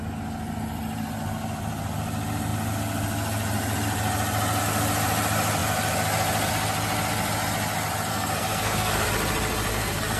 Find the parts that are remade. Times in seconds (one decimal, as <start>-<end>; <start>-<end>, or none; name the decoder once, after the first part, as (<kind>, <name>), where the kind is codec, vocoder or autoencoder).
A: 8.1-9.1 (codec, SNAC); 9.7-10.2